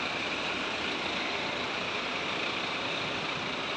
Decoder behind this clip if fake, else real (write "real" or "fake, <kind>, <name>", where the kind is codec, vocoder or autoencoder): fake, vocoder, BigVGAN v2